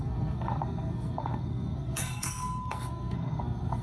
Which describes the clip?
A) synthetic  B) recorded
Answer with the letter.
A